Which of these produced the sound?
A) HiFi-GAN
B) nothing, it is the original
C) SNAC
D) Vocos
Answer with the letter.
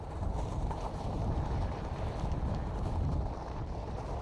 B